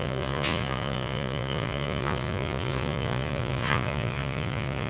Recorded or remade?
remade